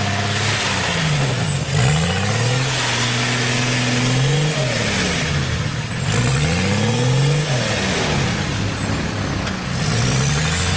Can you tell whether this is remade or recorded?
recorded